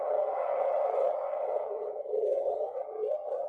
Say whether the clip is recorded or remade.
remade